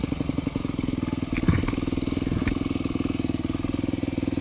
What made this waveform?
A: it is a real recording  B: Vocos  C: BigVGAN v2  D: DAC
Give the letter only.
A